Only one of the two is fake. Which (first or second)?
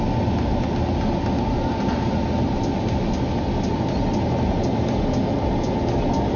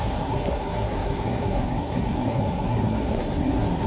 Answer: second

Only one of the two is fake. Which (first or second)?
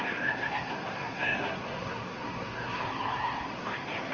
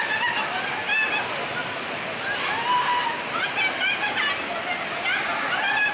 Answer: first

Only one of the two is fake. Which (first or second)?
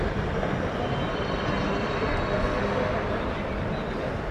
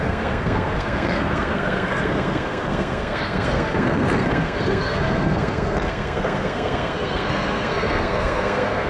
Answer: second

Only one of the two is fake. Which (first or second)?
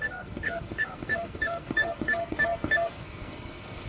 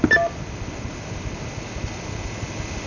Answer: first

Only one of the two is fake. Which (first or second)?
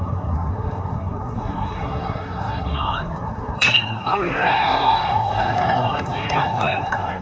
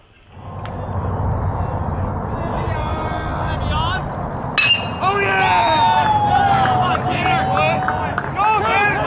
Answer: first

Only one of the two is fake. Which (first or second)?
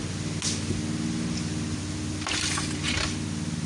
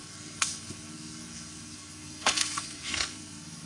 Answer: second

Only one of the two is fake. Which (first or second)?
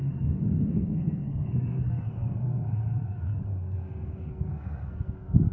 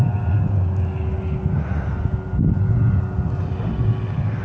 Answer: first